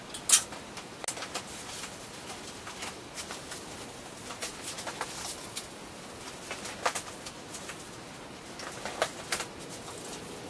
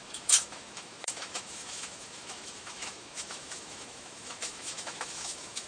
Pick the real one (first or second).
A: first